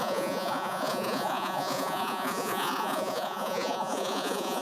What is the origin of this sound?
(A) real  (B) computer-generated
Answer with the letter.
B